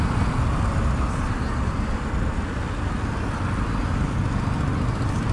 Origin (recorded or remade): recorded